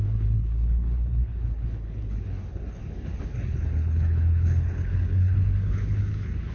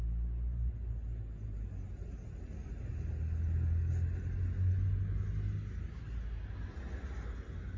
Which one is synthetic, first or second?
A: first